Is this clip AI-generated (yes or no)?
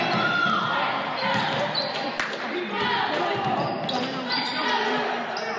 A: no